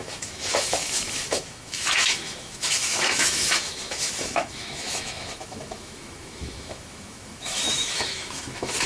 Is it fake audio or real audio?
fake